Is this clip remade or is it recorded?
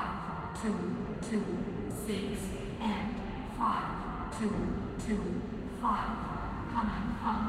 remade